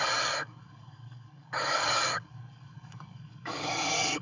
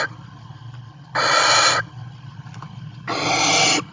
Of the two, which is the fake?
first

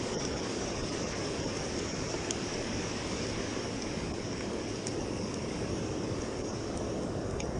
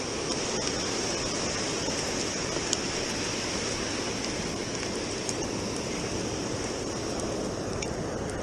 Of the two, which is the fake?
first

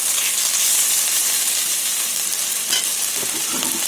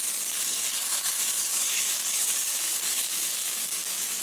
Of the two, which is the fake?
second